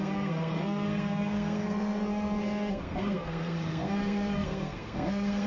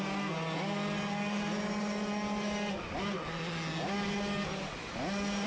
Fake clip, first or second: first